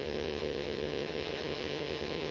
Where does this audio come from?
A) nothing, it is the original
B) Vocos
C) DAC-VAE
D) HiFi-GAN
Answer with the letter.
D